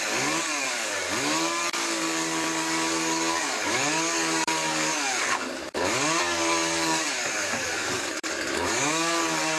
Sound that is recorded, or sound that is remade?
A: remade